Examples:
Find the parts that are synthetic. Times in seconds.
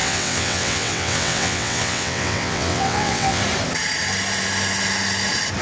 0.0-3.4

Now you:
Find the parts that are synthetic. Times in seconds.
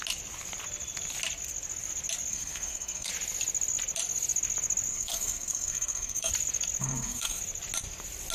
2.3-3.1; 4.9-6.3; 6.8-7.4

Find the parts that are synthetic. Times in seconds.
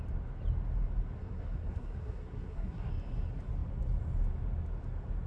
1.2-2.9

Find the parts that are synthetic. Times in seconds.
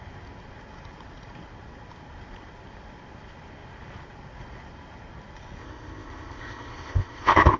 5.6-7.6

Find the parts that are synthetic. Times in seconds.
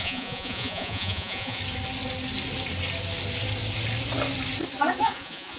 0.0-1.6; 5.0-5.6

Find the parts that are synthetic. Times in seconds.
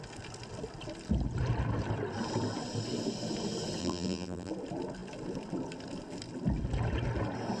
3.8-4.5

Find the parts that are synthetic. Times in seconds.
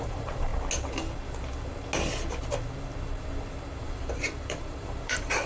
0.0-0.5; 3.8-5.5